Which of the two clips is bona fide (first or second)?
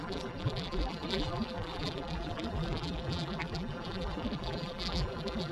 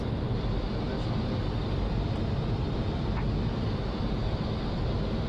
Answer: second